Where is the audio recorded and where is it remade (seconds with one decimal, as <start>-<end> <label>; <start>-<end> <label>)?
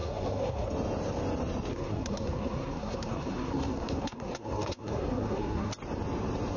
0.0-0.7 remade; 0.7-1.7 recorded; 1.7-5.7 remade; 5.7-6.6 recorded